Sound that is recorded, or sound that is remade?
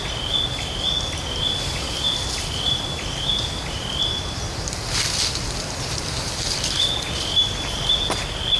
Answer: recorded